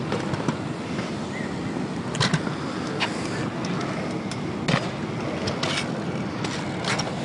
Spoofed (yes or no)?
no